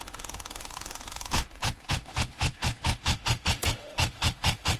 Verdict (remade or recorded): remade